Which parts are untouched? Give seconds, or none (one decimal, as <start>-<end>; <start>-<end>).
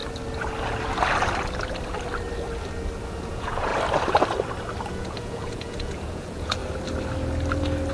0.0-3.3; 3.7-4.9; 6.6-7.9